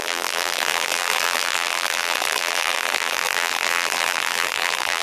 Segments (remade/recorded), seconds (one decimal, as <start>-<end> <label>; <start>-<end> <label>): 0.0-5.0 remade